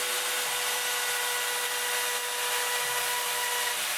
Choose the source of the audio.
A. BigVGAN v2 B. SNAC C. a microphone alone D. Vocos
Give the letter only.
C